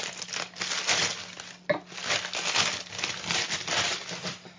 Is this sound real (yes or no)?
yes